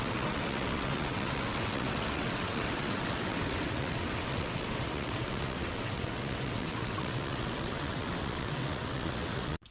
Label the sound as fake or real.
fake